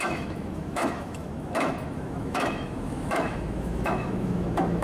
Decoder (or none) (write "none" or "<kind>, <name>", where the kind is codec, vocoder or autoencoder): autoencoder, DAC-VAE